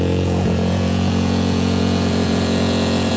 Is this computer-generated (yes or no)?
yes